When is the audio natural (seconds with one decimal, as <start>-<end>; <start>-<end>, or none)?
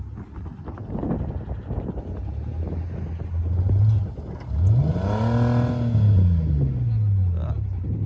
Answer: 0.0-8.1